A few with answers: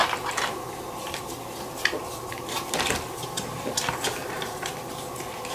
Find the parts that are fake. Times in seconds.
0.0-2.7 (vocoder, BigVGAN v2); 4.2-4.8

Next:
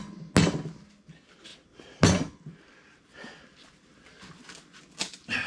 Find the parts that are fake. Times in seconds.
none